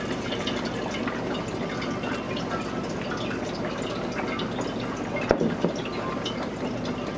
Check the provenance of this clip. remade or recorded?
recorded